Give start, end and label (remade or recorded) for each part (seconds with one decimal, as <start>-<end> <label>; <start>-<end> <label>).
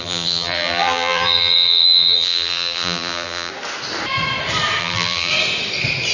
0.0-3.5 remade; 3.5-4.8 recorded; 4.8-5.3 remade; 5.3-6.1 recorded